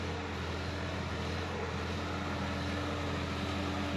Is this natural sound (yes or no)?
yes